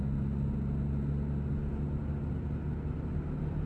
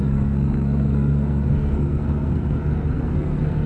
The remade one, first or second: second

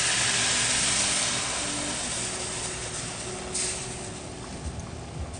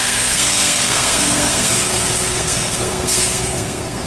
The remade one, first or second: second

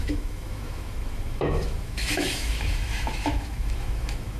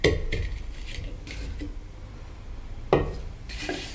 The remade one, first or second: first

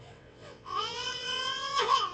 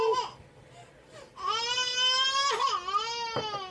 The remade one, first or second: first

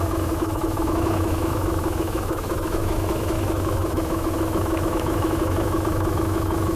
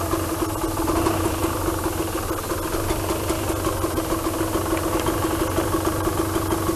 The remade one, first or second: first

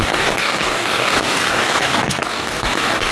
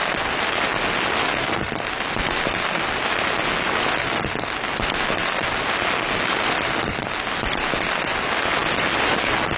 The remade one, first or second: first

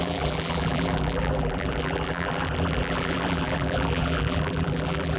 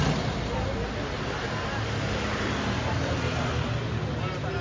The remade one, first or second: first